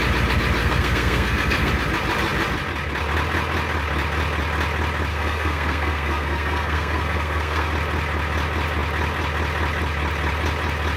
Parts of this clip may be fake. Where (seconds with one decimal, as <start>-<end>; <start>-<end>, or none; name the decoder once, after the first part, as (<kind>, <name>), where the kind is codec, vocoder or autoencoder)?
0.6-1.7 (codec, SNAC); 5.1-7.7